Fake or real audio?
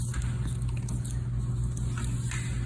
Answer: real